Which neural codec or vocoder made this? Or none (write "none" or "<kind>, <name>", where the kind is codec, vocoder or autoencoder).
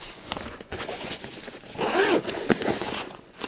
vocoder, Vocos